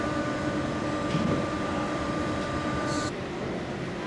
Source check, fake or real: real